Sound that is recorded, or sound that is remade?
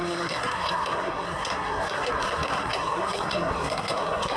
remade